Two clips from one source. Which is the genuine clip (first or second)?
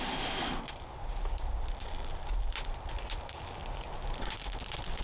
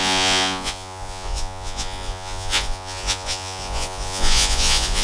first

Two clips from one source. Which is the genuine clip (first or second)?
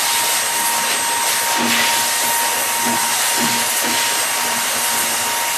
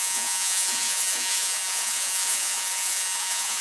first